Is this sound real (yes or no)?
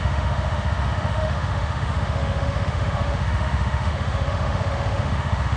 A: no